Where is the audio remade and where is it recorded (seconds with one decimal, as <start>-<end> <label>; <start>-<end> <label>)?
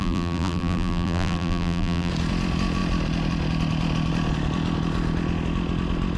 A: 0.0-2.1 remade; 2.1-6.2 recorded